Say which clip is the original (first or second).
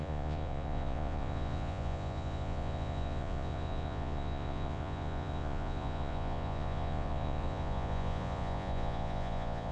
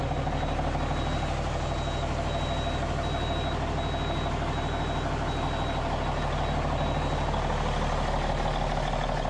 second